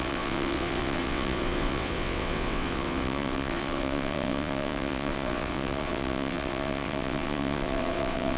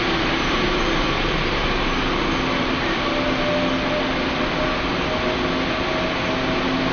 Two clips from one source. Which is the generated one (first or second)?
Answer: first